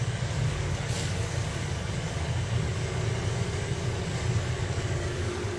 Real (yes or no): no